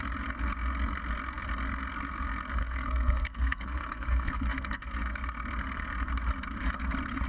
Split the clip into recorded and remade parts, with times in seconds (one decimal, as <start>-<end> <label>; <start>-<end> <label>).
0.0-2.6 recorded; 2.6-4.9 remade; 4.9-7.3 recorded